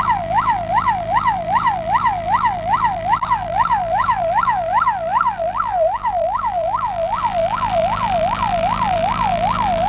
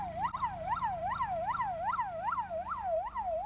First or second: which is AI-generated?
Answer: first